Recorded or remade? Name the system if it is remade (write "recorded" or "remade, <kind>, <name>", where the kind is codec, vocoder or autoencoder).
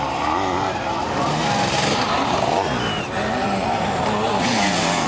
recorded